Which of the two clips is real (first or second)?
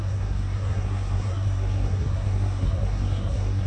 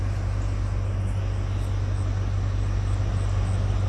second